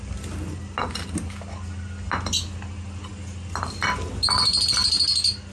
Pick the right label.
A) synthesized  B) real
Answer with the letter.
B